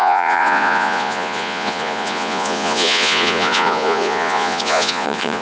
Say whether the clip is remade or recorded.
remade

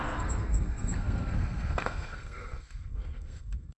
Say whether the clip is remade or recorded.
remade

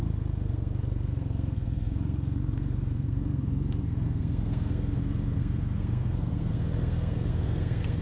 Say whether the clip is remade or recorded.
remade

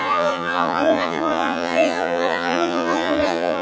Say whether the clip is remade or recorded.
remade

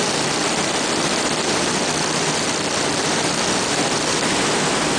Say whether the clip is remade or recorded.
recorded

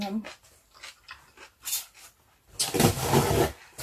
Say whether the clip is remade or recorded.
recorded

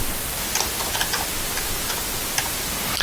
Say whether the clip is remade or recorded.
recorded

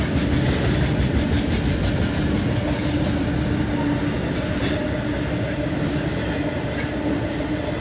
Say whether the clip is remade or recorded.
recorded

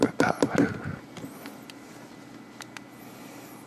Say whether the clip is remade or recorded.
recorded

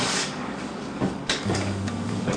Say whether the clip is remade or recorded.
remade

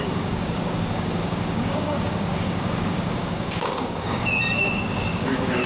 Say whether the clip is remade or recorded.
remade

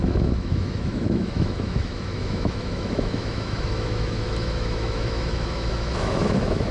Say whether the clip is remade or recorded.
remade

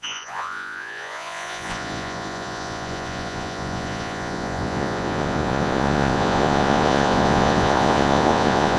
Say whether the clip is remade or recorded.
remade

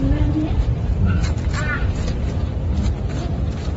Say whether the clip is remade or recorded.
recorded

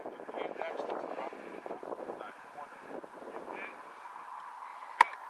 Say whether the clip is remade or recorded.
recorded